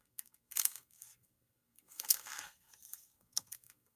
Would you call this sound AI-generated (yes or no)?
yes